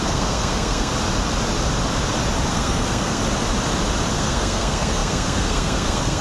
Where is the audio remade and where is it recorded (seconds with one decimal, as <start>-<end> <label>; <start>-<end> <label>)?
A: 0.0-0.9 remade; 0.9-2.5 recorded; 2.5-3.2 remade; 3.2-4.1 recorded; 4.1-6.2 remade